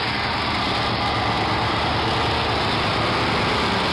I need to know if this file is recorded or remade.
recorded